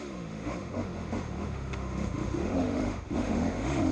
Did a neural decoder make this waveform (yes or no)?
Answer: yes